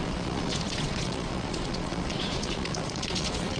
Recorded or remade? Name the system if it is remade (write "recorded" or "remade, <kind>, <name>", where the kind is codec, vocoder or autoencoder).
remade, vocoder, Vocos